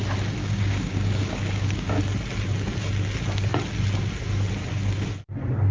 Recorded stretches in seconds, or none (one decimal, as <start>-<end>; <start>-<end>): 0.0-0.4; 2.0-5.7